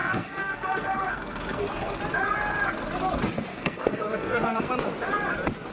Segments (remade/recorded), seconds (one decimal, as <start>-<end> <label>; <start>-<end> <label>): 0.0-2.0 remade; 2.0-3.5 recorded; 3.5-4.7 remade; 4.7-5.7 recorded